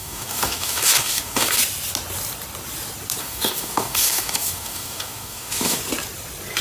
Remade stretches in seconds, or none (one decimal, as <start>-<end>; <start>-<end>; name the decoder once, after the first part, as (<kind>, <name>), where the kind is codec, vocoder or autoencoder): 0.0-1.6 (codec, DAC); 3.2-5.8